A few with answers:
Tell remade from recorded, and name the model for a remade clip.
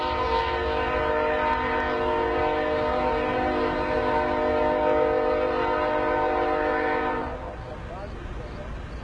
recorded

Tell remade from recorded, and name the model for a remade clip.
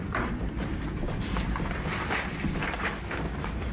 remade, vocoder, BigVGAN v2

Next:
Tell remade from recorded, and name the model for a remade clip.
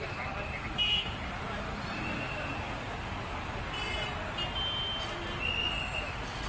recorded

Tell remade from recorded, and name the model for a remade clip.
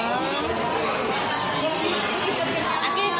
recorded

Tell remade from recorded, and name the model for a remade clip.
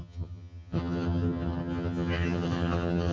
remade, vocoder, HiFi-GAN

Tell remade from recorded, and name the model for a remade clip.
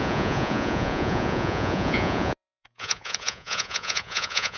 remade, vocoder, Vocos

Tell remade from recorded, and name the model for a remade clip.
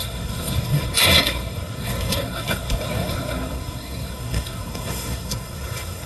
remade, codec, SNAC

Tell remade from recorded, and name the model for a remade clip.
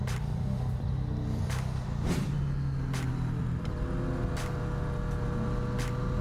recorded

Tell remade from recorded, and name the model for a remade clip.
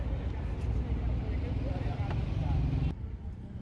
recorded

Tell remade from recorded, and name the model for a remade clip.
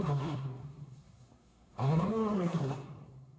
remade, codec, SNAC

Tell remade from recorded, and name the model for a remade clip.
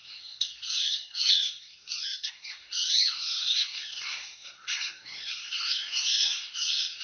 remade, codec, SNAC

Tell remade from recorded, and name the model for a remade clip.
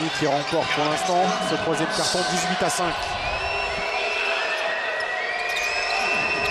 recorded